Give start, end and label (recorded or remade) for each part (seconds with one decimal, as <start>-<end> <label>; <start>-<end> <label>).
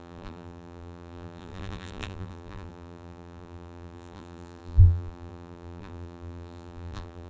0.0-7.3 remade